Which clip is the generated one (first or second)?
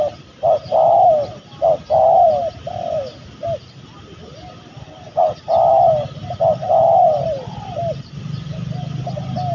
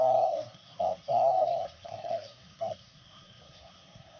second